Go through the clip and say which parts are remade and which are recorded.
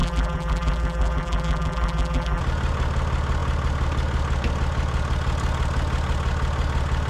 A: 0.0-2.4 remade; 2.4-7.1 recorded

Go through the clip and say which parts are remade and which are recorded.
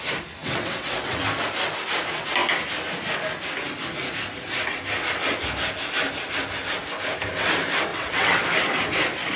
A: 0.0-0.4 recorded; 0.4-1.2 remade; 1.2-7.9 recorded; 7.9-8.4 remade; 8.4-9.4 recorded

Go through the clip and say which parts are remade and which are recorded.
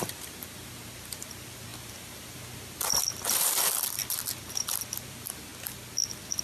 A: 0.0-4.0 remade; 4.0-5.1 recorded; 5.1-5.5 remade; 5.5-6.4 recorded